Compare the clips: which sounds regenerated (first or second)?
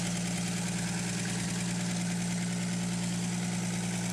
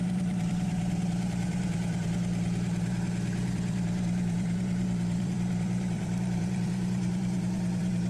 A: second